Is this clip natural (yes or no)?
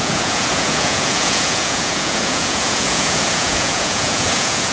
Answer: no